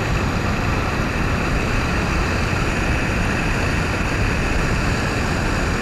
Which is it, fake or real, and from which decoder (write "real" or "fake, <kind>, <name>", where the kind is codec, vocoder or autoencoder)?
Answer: fake, vocoder, BigVGAN v2